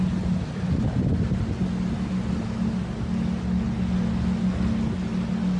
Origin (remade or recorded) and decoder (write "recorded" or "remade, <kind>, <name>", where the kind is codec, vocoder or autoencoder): recorded